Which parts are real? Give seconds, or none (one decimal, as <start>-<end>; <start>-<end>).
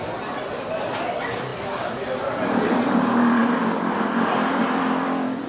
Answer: none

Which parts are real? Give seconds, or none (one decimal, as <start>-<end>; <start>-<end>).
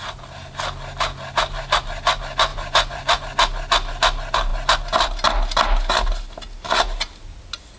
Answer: 0.0-2.5; 3.2-7.8